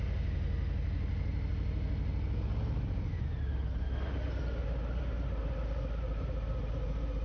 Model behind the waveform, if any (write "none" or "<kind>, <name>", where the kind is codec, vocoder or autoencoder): none